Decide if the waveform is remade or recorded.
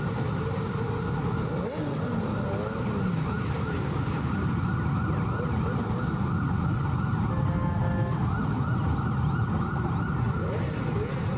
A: recorded